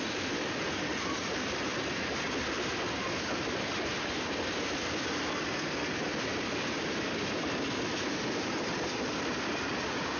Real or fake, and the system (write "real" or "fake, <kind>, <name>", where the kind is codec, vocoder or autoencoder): real